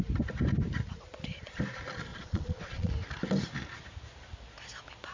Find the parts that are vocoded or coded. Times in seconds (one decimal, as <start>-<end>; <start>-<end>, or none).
2.1-2.9